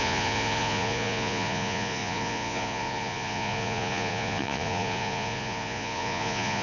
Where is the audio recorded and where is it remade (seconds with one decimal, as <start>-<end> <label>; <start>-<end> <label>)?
0.0-6.6 remade